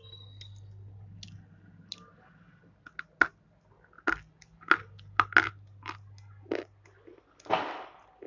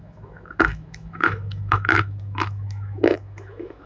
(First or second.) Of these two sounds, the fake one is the second